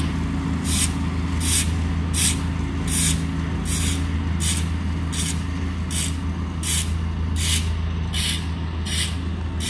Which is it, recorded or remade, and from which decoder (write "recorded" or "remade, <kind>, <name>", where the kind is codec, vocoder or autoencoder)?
recorded